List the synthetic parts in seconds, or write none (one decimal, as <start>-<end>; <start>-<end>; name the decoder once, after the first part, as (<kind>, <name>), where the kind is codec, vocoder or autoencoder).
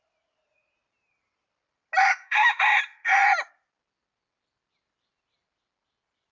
2.1-2.8 (autoencoder, DAC-VAE)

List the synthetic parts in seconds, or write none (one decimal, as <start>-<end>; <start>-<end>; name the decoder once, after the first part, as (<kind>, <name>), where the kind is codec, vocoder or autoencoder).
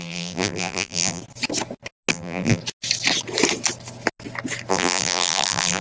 0.0-1.2 (vocoder, BigVGAN v2); 2.1-2.6; 4.7-5.8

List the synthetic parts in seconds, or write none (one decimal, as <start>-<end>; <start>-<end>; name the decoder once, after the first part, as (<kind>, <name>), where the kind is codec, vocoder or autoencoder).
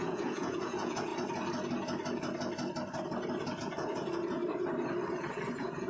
0.0-1.1 (vocoder, Vocos); 3.6-4.4; 5.1-5.9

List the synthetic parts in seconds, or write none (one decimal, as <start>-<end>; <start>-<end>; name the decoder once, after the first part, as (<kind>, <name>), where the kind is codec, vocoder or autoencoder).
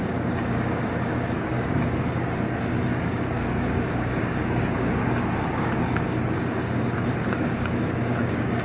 0.0-5.0 (codec, DAC); 5.5-8.6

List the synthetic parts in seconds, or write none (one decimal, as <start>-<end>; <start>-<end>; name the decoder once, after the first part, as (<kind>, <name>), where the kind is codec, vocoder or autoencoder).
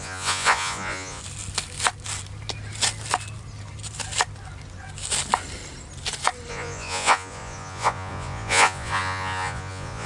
0.0-1.2 (vocoder, Vocos); 6.5-10.1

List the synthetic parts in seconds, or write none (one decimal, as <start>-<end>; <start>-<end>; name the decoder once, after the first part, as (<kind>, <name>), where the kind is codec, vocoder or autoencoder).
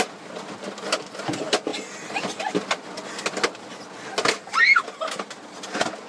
none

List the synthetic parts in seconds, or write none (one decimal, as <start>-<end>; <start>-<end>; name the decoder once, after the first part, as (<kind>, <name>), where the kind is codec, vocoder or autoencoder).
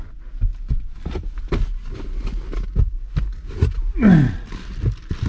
none